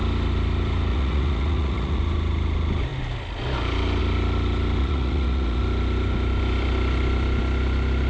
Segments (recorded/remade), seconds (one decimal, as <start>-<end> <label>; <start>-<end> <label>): 0.0-0.9 recorded; 0.9-2.0 remade; 2.0-4.8 recorded; 4.8-5.6 remade; 5.6-8.1 recorded